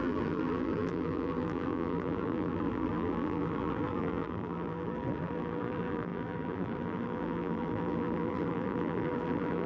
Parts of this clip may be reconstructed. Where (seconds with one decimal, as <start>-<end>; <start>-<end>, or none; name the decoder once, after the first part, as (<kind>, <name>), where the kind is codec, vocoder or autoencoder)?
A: 0.0-9.7 (vocoder, BigVGAN v2)

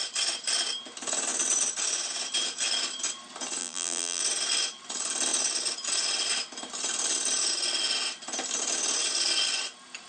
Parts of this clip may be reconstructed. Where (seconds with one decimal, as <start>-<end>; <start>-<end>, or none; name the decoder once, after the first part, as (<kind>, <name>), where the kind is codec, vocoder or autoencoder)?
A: 3.6-4.2 (vocoder, BigVGAN v2)

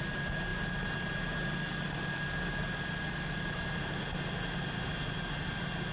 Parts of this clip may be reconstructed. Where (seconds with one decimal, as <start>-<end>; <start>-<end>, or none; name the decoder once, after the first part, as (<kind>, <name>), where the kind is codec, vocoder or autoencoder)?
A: none

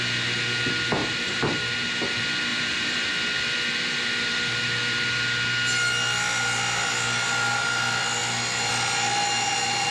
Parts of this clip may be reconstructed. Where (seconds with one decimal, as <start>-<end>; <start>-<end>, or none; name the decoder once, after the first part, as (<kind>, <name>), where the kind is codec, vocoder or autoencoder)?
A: 1.0-1.6 (vocoder, BigVGAN v2); 2.5-3.1

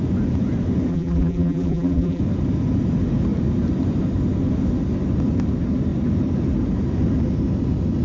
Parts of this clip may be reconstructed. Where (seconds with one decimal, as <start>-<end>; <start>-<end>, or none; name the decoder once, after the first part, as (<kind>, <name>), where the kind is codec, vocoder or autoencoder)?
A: 0.9-2.2 (vocoder, BigVGAN v2)

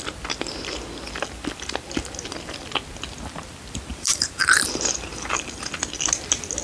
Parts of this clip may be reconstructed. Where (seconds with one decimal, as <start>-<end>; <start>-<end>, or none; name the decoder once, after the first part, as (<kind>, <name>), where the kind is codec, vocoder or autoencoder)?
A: 3.9-5.7 (vocoder, BigVGAN v2)